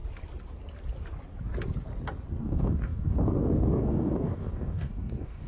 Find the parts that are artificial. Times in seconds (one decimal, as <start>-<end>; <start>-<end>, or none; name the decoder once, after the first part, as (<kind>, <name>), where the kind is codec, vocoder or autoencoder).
2.4-5.5 (codec, DAC)